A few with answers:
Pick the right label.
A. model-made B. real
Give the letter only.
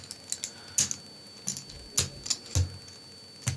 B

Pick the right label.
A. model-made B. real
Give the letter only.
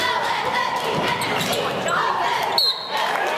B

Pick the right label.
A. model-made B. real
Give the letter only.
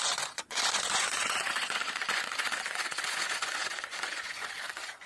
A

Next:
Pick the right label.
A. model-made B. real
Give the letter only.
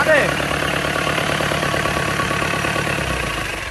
A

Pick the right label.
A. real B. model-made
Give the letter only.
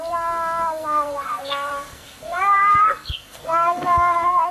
B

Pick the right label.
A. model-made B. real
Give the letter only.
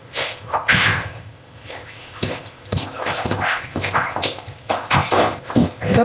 A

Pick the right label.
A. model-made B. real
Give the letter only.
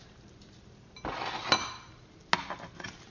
B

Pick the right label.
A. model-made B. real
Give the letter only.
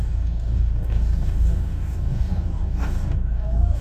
A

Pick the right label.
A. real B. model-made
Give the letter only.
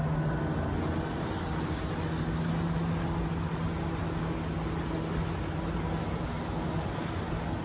A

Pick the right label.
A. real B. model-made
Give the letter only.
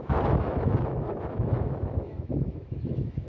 B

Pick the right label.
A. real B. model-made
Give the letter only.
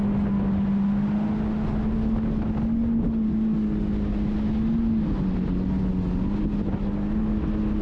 A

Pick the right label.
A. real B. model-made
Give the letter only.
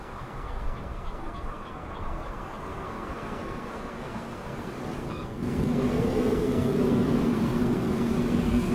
B